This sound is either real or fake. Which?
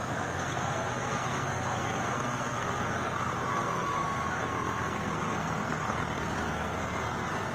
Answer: fake